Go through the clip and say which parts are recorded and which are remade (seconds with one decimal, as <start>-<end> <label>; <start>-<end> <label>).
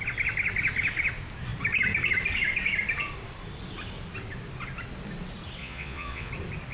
0.0-5.6 recorded; 5.6-6.3 remade; 6.3-6.7 recorded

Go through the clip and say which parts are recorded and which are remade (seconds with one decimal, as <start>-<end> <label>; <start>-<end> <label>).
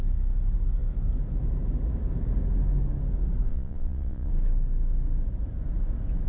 0.0-3.5 recorded; 3.5-4.3 remade; 4.3-6.3 recorded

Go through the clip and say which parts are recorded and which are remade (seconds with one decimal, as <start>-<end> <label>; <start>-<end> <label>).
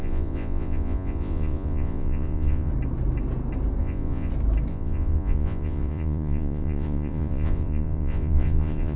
0.0-2.7 remade; 2.7-3.8 recorded; 3.8-4.3 remade; 4.3-4.7 recorded; 4.7-9.0 remade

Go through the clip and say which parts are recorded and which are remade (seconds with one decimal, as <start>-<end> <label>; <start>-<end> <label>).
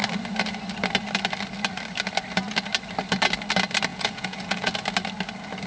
0.0-3.9 recorded; 3.9-4.7 remade; 4.7-5.7 recorded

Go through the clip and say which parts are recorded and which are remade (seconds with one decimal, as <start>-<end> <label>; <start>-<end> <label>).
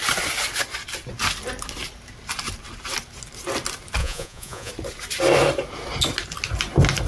0.0-4.0 recorded; 4.0-4.7 remade; 4.7-7.1 recorded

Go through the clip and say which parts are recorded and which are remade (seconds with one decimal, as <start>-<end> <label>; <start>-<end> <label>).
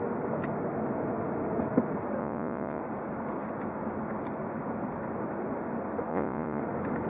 0.0-2.2 recorded; 2.2-2.8 remade; 2.8-6.1 recorded; 6.1-6.6 remade; 6.6-7.1 recorded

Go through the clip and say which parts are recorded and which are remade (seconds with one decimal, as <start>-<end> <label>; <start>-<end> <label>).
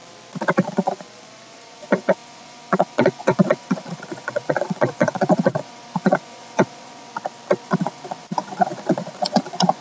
0.0-0.7 recorded; 0.7-7.1 remade; 7.1-7.6 recorded; 7.6-9.8 remade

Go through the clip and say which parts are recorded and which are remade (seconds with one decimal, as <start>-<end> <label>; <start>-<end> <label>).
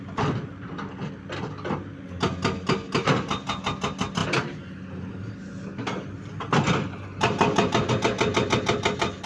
0.0-9.3 recorded